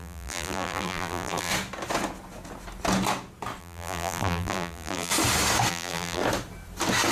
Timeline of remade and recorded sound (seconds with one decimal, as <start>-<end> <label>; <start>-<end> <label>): 0.0-1.5 remade; 1.5-3.6 recorded; 3.6-5.1 remade; 5.1-5.7 recorded; 5.7-6.2 remade; 6.2-7.1 recorded